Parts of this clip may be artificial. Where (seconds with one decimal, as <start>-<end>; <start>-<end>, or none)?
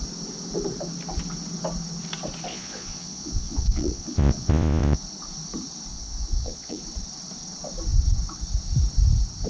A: 2.5-5.0; 5.9-6.8